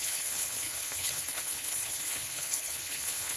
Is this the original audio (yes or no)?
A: no